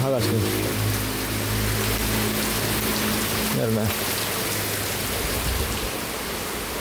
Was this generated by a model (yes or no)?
no